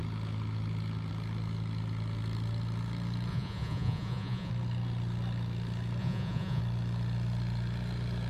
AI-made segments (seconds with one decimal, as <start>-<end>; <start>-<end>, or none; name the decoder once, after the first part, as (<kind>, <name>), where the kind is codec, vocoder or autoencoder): 3.3-4.5 (vocoder, Vocos); 6.0-6.6